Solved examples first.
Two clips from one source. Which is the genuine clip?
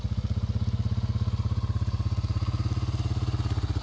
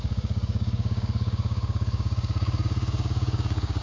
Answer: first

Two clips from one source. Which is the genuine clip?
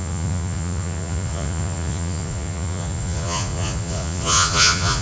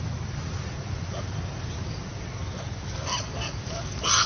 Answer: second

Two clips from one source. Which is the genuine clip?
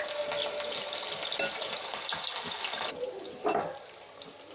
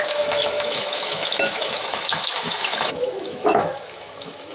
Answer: first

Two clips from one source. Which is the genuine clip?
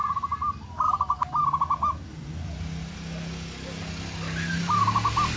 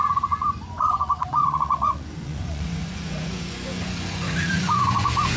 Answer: first